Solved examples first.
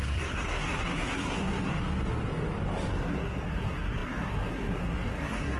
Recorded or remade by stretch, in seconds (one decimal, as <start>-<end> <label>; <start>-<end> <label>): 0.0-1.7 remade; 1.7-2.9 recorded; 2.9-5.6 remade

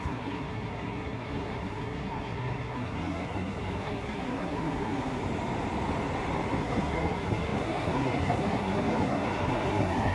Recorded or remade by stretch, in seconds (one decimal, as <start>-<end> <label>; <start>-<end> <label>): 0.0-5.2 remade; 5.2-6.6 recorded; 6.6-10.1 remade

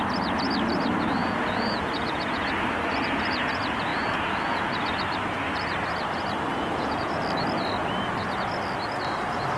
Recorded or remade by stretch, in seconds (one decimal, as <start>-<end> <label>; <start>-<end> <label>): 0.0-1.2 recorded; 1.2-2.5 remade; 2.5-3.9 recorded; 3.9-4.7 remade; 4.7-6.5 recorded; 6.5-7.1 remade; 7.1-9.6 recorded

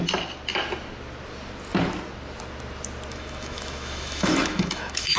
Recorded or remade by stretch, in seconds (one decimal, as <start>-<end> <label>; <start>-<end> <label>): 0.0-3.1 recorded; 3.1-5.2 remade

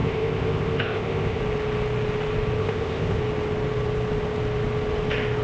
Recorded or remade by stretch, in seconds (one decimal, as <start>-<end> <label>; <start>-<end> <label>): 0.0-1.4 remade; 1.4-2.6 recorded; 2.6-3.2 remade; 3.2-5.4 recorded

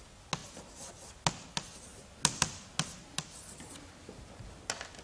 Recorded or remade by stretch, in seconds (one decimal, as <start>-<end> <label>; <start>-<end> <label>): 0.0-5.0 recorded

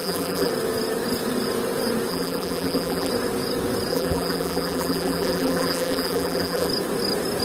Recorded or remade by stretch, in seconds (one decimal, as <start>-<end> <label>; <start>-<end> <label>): 0.0-0.5 remade; 0.5-2.1 recorded; 2.1-3.1 remade; 3.1-3.9 recorded; 3.9-6.7 remade; 6.7-7.4 recorded